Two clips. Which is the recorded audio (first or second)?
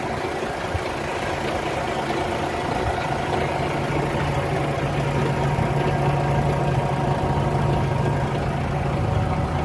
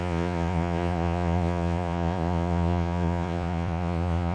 first